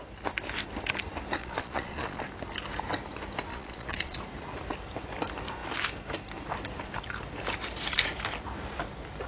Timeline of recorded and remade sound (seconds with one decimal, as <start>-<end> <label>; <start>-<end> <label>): 0.0-1.4 recorded; 1.4-2.2 remade; 2.2-3.5 recorded; 3.5-4.2 remade; 4.2-9.3 recorded